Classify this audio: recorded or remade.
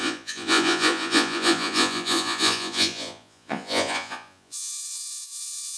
remade